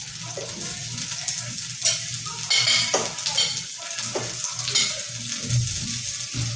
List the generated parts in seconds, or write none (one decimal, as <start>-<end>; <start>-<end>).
none